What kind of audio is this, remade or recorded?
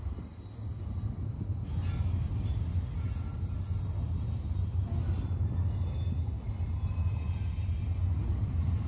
recorded